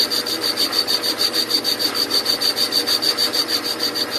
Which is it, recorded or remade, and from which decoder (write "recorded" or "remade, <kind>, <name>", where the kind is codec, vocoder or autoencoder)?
recorded